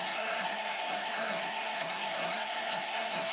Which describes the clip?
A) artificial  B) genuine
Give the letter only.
A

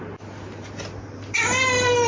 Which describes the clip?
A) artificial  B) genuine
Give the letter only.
B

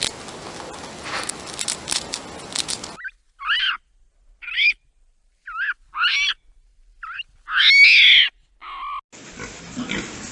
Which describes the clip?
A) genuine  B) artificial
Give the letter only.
A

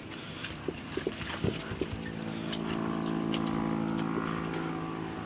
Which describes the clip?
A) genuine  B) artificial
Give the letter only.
A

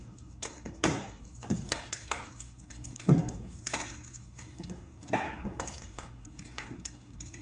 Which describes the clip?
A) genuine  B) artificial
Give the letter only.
B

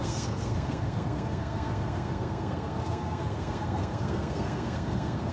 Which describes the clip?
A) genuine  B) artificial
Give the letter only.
B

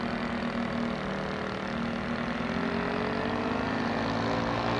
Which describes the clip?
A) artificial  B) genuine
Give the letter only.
B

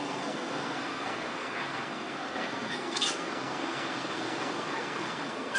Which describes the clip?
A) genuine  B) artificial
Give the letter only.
B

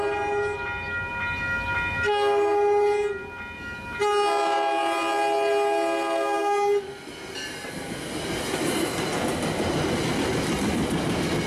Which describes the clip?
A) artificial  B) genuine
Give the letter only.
B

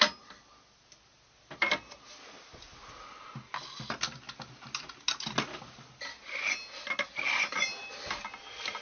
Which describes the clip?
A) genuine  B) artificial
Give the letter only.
A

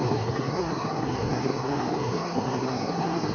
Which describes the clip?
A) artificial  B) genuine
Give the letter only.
A